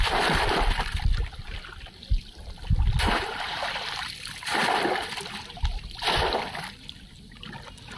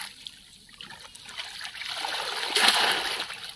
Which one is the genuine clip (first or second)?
second